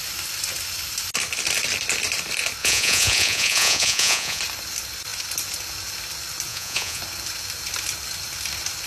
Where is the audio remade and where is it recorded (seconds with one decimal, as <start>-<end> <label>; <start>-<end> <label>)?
0.0-2.6 recorded; 2.6-4.4 remade; 4.4-6.5 recorded; 6.5-7.0 remade; 7.0-8.9 recorded